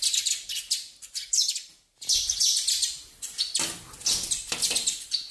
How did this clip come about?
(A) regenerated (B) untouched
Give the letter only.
B